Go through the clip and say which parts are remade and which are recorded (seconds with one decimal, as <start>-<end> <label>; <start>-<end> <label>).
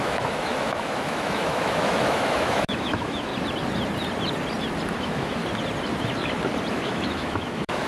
0.0-3.3 remade; 3.3-5.0 recorded; 5.0-5.4 remade; 5.4-6.7 recorded; 6.7-7.9 remade